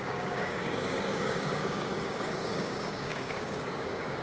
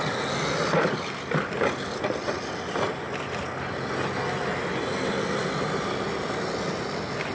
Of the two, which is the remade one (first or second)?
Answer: first